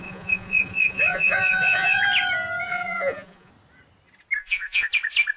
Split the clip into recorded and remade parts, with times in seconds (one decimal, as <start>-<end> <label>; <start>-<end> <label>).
0.0-2.0 remade; 2.0-2.7 recorded; 2.7-3.5 remade; 3.5-4.4 recorded; 4.4-4.9 remade; 4.9-5.4 recorded